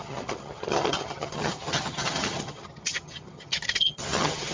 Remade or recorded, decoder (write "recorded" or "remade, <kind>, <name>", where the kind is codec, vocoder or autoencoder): remade, vocoder, HiFi-GAN